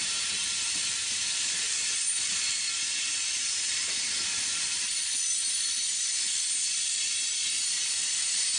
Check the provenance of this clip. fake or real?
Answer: fake